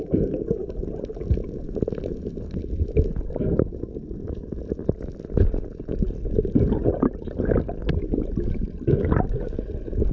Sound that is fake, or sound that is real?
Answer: real